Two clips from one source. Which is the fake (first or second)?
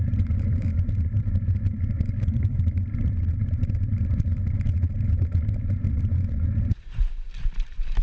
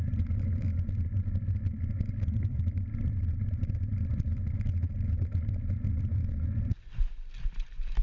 first